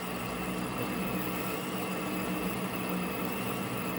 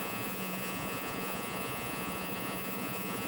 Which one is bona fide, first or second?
first